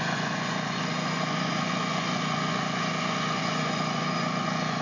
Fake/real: fake